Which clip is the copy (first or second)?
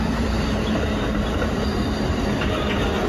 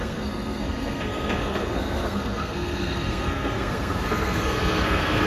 second